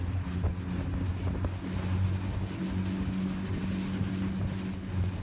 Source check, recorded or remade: recorded